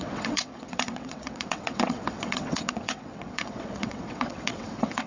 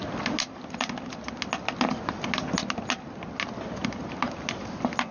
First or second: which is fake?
first